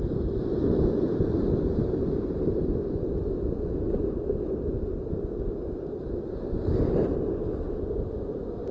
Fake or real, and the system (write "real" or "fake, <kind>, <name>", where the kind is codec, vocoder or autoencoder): real